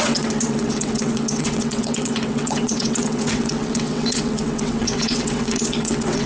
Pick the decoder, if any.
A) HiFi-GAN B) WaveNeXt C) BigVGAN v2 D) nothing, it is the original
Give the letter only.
B